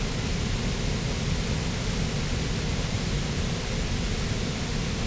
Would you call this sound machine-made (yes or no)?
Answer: no